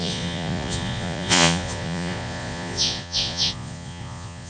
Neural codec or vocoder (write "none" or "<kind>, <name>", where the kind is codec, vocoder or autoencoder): vocoder, Vocos